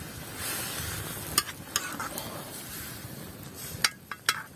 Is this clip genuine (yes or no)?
yes